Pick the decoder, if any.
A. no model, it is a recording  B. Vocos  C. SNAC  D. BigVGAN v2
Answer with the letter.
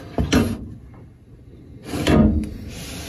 A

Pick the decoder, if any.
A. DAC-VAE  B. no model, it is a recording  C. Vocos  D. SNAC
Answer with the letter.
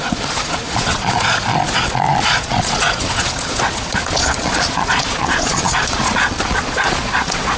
C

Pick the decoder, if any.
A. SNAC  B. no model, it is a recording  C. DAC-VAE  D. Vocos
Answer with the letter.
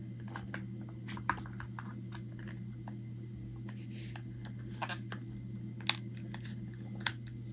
B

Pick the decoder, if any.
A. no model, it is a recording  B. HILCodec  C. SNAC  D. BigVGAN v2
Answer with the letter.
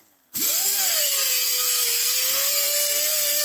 C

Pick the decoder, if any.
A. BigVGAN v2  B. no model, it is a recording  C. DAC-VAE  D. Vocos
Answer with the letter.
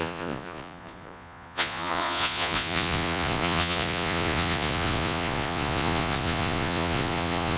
D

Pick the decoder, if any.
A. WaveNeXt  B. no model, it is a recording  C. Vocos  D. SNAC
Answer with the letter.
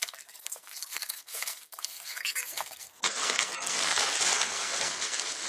D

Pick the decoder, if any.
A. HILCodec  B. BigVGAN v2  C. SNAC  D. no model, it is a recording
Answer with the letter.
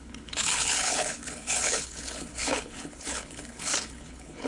A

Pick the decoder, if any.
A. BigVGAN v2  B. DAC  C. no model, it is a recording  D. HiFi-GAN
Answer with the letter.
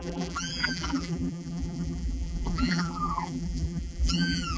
A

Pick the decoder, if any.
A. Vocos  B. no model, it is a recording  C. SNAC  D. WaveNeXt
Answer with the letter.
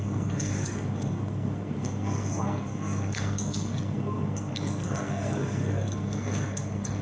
C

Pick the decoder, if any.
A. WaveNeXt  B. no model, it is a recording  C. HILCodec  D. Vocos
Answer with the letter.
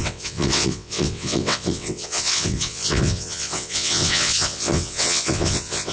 A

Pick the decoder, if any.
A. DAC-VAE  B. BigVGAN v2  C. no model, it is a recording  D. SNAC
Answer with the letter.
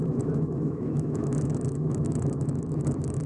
A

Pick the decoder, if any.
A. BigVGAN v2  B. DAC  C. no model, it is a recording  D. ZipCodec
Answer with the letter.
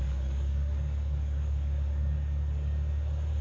B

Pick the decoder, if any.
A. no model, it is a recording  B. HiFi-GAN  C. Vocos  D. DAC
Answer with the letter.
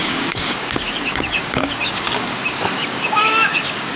D